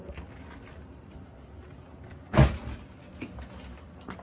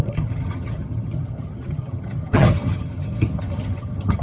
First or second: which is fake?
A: second